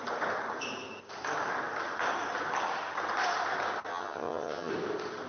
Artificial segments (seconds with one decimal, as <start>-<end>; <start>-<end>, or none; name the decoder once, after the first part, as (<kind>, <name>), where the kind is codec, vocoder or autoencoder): 3.9-4.7 (vocoder, HiFi-GAN)